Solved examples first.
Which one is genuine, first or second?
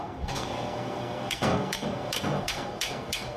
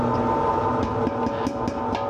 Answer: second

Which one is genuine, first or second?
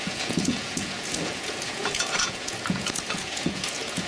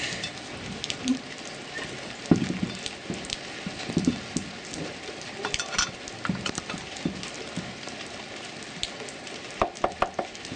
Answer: second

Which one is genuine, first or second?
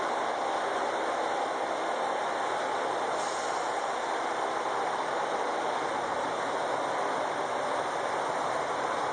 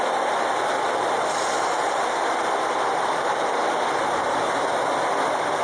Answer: first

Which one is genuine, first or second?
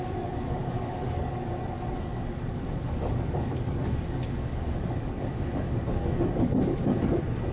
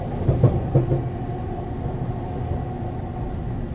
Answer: second